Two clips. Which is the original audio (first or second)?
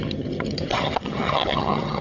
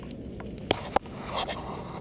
second